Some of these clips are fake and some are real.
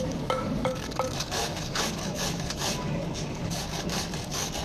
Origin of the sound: fake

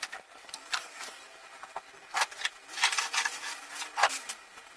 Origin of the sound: fake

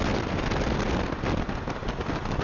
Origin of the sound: real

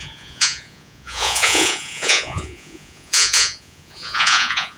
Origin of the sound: fake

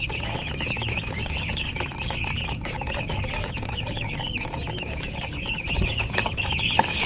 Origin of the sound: fake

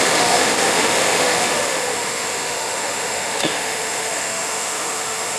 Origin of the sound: fake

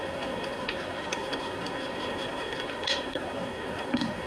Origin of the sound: fake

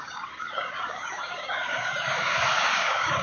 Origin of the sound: fake